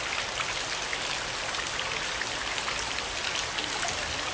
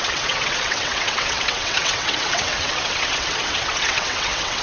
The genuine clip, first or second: first